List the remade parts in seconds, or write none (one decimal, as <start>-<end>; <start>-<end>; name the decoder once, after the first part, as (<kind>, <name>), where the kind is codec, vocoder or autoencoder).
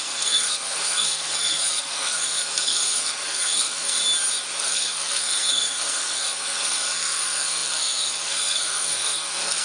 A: 0.0-4.0 (codec, SNAC); 4.6-9.6